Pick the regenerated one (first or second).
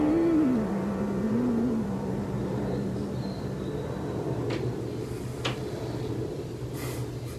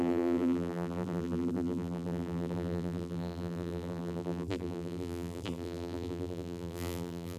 second